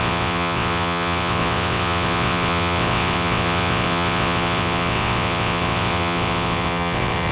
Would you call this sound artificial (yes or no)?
yes